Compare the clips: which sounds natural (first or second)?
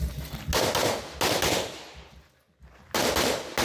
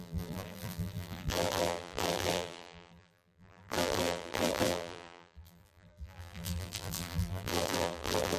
first